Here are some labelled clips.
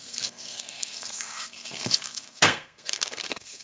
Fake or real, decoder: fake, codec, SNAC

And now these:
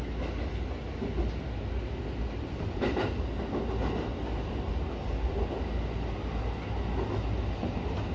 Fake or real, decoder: real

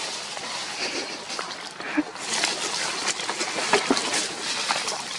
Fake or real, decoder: real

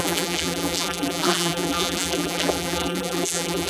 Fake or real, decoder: fake, vocoder, BigVGAN v2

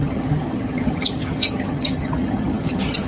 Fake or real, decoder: fake, vocoder, HiFi-GAN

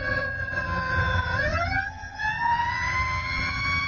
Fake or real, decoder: fake, vocoder, HiFi-GAN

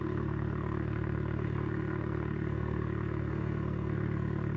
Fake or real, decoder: fake, codec, SNAC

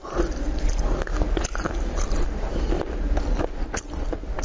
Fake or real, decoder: real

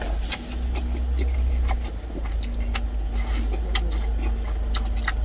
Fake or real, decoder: real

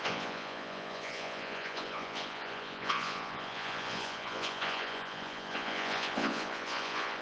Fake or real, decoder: fake, vocoder, Vocos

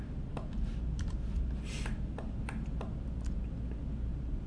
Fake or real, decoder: real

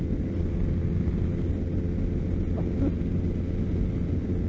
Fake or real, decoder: real